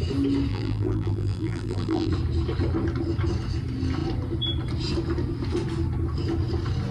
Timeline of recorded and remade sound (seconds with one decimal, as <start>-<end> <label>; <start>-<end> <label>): 0.0-0.5 recorded; 0.5-2.1 remade; 2.1-6.9 recorded